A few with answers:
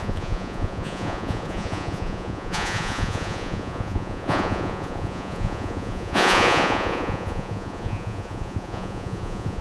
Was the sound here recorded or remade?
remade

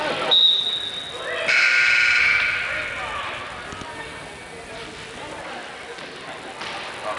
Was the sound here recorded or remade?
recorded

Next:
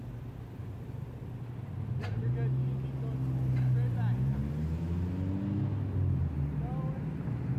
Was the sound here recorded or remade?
recorded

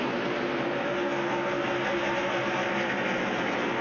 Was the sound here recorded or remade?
recorded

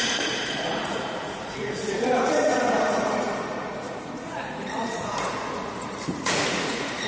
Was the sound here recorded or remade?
remade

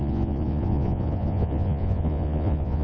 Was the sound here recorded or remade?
remade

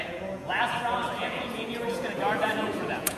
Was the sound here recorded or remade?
remade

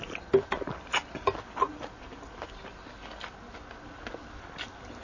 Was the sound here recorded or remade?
recorded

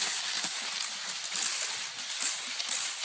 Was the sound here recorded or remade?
recorded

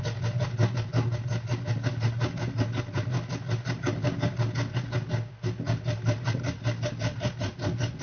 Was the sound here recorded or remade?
recorded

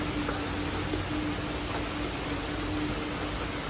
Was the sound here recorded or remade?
recorded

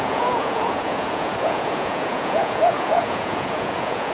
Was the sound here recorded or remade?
remade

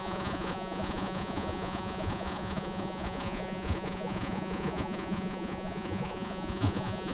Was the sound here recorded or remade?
remade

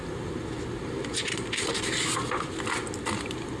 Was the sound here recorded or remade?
recorded